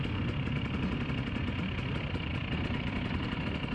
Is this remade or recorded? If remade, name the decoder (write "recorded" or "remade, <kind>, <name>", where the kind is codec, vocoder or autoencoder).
recorded